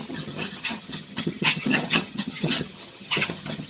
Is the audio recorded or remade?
remade